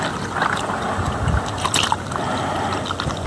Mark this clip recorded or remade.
recorded